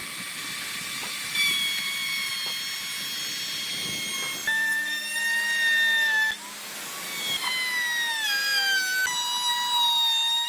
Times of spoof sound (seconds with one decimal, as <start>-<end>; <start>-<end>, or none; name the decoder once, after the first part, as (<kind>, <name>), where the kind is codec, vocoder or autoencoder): 0.0-2.3 (vocoder, BigVGAN v2); 4.4-5.0